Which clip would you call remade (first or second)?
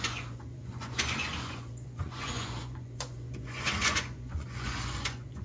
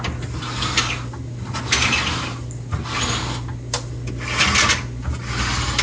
first